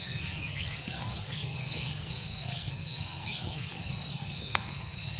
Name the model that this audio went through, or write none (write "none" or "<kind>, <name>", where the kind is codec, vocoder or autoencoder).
codec, SNAC